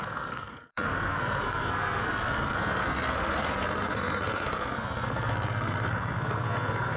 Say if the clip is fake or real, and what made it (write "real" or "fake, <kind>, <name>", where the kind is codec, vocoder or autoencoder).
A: fake, codec, SNAC